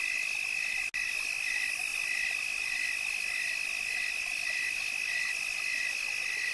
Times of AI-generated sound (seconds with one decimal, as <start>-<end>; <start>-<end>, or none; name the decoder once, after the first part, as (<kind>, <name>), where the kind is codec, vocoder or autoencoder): none